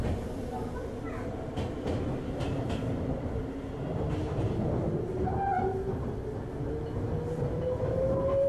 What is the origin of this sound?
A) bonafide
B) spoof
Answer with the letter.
A